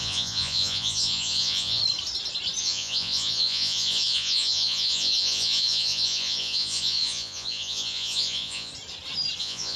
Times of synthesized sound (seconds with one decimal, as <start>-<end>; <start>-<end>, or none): 0.0-1.8; 2.6-8.7; 9.4-9.8